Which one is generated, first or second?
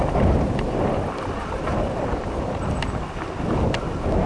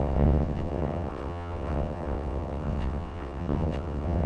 second